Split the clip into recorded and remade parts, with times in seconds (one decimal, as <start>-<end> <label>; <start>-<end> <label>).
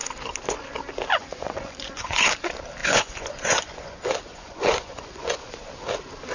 0.0-1.1 recorded; 1.1-2.3 remade; 2.3-2.8 recorded; 2.8-5.5 remade; 5.5-6.3 recorded